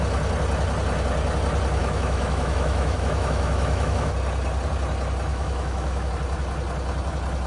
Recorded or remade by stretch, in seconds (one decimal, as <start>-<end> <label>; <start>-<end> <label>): 0.0-1.8 recorded; 1.8-4.1 remade; 4.1-5.3 recorded; 5.3-6.1 remade; 6.1-7.5 recorded

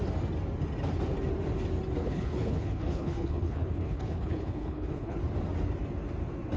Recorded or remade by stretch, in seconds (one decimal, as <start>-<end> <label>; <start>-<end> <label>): 0.0-2.0 recorded; 2.0-5.2 remade; 5.2-6.6 recorded

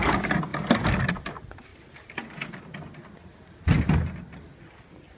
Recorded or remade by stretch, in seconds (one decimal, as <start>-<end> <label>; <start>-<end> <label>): 0.0-5.2 recorded

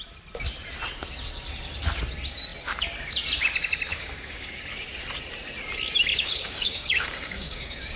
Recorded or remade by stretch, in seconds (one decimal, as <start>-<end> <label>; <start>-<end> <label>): 0.0-3.9 recorded; 3.9-4.6 remade; 4.6-6.1 recorded; 6.1-8.0 remade

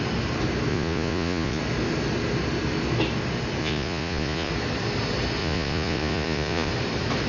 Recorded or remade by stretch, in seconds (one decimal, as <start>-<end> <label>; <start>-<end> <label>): 0.0-0.7 recorded; 0.7-1.6 remade; 1.6-3.6 recorded; 3.6-4.5 remade; 4.5-5.4 recorded; 5.4-6.7 remade; 6.7-7.3 recorded

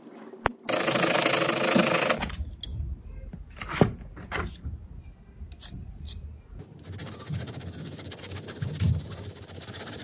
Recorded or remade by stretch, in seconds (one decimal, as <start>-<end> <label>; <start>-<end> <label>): 0.0-7.0 recorded; 7.0-9.0 remade; 9.0-10.0 recorded